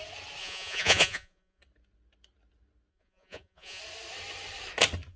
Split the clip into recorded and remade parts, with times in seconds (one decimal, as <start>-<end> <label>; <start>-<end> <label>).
0.0-0.4 recorded; 0.4-1.6 remade; 1.6-2.9 recorded; 2.9-3.8 remade; 3.8-5.2 recorded